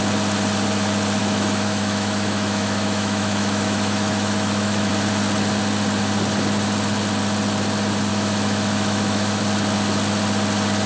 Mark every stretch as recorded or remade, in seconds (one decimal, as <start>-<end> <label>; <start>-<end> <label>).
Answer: 0.0-1.2 recorded; 1.2-4.9 remade; 4.9-8.1 recorded; 8.1-9.4 remade; 9.4-10.9 recorded